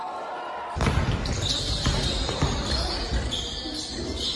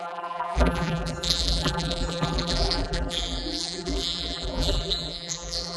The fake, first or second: second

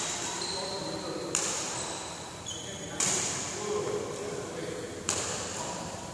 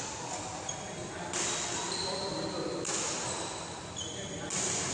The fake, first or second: first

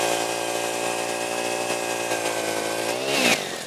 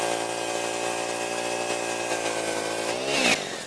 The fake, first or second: first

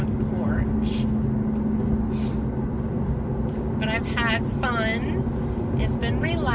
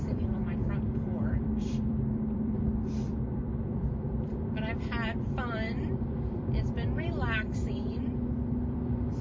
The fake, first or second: second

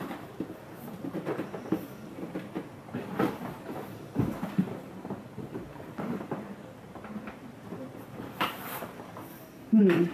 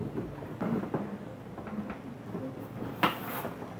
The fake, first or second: first